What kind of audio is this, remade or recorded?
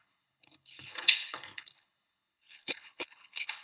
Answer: remade